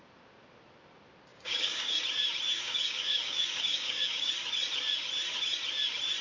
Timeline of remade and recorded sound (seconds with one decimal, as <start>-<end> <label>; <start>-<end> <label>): 0.0-1.3 recorded; 1.3-2.0 remade; 2.0-2.5 recorded; 2.5-4.3 remade; 4.3-6.2 recorded

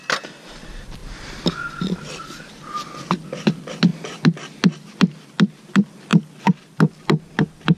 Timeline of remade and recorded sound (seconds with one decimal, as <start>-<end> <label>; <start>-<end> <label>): 0.0-7.8 recorded